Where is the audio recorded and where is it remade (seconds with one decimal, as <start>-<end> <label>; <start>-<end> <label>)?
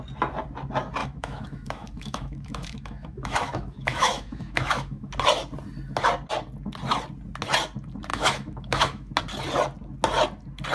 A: 0.0-1.0 recorded; 1.0-5.1 remade; 5.1-8.1 recorded; 8.1-9.1 remade; 9.1-10.7 recorded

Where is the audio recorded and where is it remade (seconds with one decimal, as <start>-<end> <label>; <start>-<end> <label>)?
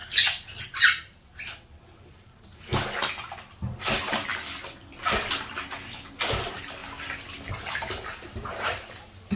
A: 0.0-2.1 recorded; 2.1-2.7 remade; 2.7-3.8 recorded; 3.8-4.3 remade; 4.3-6.3 recorded; 6.3-6.8 remade; 6.8-7.5 recorded; 7.5-9.4 remade